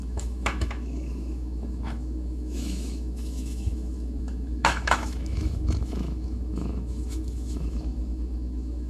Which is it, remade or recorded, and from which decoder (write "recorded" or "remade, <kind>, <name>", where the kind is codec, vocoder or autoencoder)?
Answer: remade, autoencoder, DAC-VAE